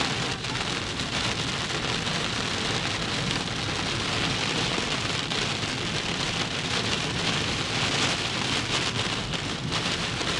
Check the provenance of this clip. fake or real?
real